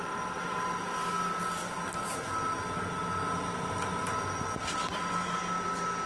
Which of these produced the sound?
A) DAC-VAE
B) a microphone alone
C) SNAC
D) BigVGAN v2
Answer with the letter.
B